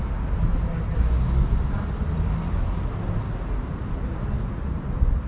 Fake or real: real